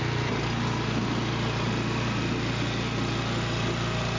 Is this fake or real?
real